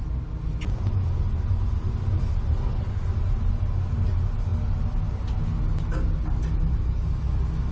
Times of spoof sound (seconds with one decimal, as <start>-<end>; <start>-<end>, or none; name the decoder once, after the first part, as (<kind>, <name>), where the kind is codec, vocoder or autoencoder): 2.5-3.1 (codec, SNAC)